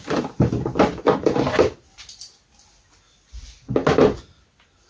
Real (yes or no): yes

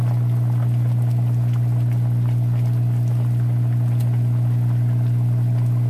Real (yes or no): yes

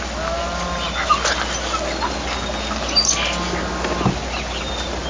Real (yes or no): yes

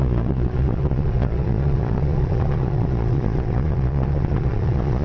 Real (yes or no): no